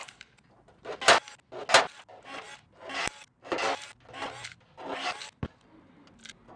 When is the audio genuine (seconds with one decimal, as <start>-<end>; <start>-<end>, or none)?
0.9-6.6